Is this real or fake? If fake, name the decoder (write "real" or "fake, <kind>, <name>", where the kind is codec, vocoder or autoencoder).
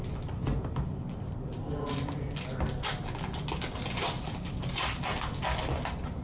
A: real